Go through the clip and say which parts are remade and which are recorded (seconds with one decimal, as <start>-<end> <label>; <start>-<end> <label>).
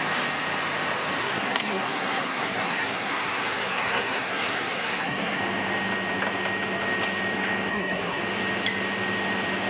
0.0-1.2 recorded; 1.2-5.4 remade; 5.4-7.7 recorded; 7.7-8.2 remade; 8.2-9.7 recorded